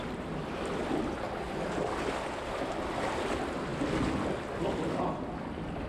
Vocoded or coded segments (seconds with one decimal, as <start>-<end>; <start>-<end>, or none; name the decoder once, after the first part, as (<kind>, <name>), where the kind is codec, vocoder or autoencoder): 0.0-3.7 (vocoder, BigVGAN v2); 4.8-5.9